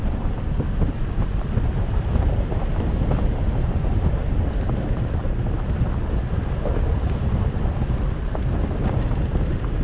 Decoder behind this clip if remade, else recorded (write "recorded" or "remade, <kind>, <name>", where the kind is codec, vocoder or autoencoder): recorded